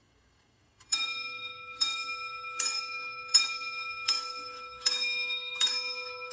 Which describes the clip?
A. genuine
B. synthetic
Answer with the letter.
B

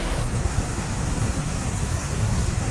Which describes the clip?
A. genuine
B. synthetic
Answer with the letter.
B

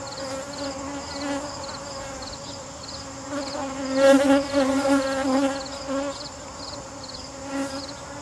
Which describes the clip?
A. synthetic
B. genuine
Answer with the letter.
B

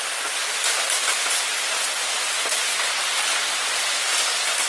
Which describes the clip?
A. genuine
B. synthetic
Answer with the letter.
A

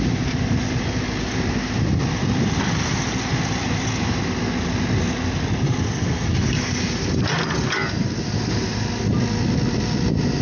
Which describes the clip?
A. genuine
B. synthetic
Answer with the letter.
A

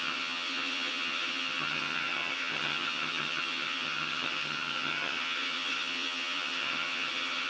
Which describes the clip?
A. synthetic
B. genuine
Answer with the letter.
A